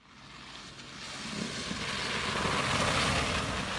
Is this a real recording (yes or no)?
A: yes